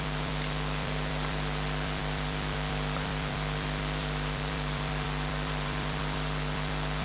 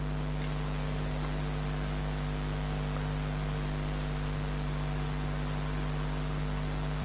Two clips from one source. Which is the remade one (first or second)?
first